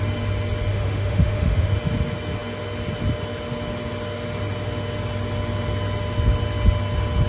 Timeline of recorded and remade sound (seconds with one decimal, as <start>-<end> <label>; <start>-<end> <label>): 0.0-0.7 recorded; 0.7-1.7 remade; 1.7-7.3 recorded